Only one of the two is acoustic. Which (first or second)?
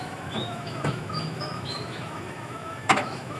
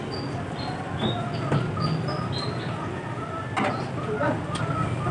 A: second